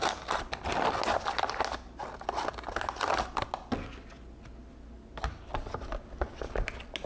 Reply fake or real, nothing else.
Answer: real